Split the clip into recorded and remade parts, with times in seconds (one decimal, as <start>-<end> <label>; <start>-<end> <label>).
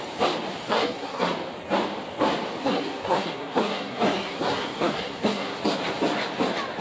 0.0-0.7 recorded; 0.7-1.3 remade; 1.3-2.6 recorded; 2.6-5.6 remade; 5.6-6.8 recorded